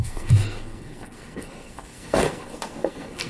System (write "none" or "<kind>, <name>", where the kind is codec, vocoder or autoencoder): codec, SNAC